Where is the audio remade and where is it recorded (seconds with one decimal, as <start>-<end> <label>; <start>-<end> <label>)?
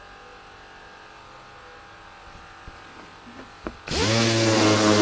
0.0-5.0 recorded